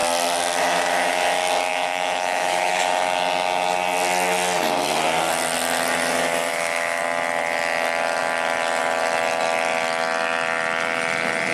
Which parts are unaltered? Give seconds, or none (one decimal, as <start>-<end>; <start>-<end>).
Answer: 0.0-1.7; 2.7-6.5; 7.0-11.5